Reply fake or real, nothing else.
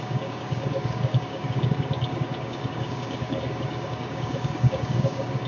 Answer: fake